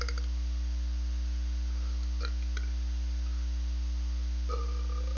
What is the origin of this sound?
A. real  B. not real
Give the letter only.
A